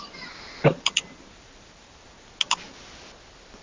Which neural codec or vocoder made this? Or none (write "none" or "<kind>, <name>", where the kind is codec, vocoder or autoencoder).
none